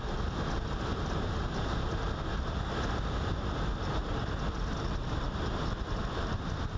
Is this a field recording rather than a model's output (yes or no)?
yes